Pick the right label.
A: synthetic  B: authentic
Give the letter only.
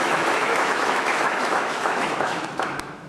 A